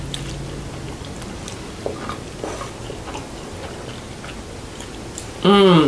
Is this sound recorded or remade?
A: recorded